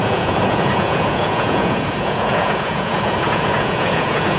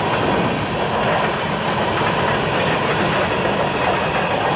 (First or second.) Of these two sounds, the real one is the second